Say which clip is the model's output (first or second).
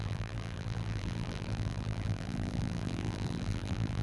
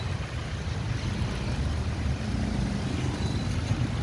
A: first